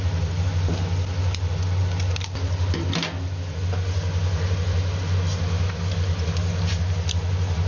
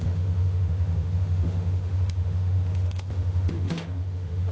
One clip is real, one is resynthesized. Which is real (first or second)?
first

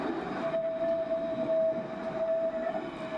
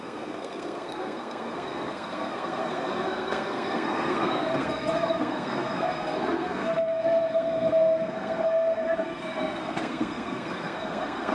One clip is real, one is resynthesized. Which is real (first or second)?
first